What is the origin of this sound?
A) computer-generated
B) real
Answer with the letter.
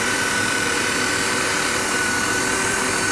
A